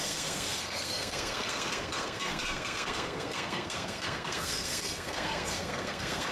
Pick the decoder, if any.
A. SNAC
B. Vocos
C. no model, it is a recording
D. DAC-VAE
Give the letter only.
A